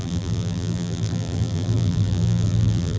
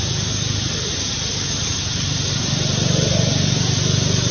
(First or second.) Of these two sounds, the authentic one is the second